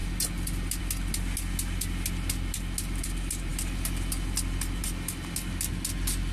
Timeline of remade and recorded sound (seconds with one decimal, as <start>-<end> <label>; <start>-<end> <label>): 0.0-6.3 recorded